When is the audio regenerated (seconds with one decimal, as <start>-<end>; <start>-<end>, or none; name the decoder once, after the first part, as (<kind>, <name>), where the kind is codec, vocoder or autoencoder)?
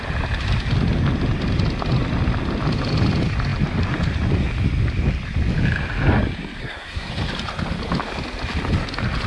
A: 6.6-7.1 (codec, SNAC)